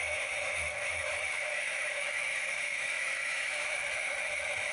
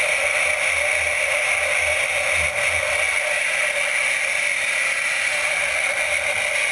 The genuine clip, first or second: second